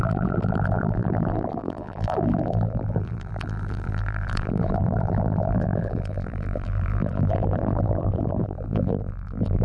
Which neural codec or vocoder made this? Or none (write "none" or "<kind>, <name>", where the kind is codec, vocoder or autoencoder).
vocoder, BigVGAN v2